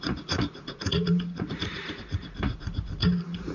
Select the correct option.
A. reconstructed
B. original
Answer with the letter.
A